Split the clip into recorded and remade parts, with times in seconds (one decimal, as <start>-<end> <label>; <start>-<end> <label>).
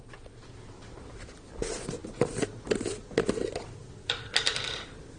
0.0-5.2 recorded